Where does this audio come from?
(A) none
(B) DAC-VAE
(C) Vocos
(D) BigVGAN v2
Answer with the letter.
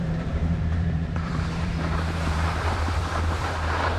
D